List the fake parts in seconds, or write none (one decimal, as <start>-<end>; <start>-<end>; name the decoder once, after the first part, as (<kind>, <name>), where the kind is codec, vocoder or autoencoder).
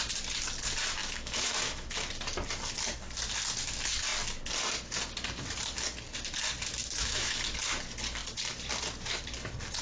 1.0-2.1 (autoencoder, DAC-VAE); 6.8-7.4